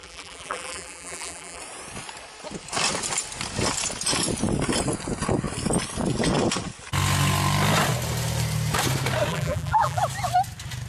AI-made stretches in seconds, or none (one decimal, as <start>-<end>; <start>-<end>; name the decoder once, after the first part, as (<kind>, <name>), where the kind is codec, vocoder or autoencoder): 0.0-1.6 (vocoder, BigVGAN v2); 9.3-10.0

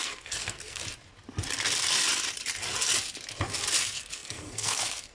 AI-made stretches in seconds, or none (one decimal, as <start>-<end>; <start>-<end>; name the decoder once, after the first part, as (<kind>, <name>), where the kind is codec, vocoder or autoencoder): 0.0-0.8 (codec, SNAC); 3.8-5.1

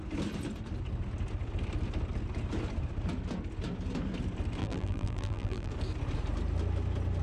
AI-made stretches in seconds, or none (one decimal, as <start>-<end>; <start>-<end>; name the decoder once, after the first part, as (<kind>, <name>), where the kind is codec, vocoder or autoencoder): 4.6-5.7 (vocoder, BigVGAN v2)

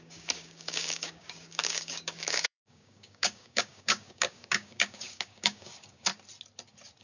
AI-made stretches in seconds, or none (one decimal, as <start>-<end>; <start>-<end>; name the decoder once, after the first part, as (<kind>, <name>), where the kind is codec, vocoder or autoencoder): 0.0-6.1 (codec, DAC)

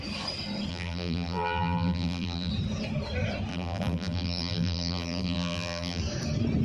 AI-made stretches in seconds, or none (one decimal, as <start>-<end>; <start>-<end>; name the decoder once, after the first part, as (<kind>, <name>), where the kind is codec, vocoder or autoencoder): 0.7-2.5 (vocoder, BigVGAN v2); 3.5-6.0